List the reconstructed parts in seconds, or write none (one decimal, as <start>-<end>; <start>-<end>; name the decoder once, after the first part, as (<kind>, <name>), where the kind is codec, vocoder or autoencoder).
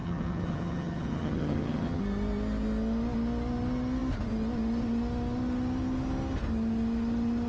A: 0.0-2.0 (vocoder, HiFi-GAN)